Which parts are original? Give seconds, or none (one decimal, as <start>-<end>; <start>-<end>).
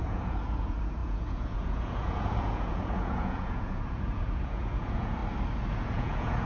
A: 5.2-5.7